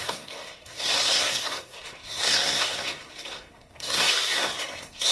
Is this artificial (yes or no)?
yes